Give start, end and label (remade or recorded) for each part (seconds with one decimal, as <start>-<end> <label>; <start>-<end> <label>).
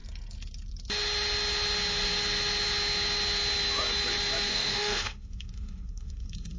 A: 0.0-4.5 recorded; 4.5-6.6 remade